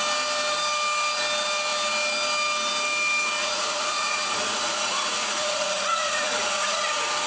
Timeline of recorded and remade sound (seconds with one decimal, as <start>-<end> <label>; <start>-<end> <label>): 0.0-3.4 recorded; 3.4-6.8 remade; 6.8-7.3 recorded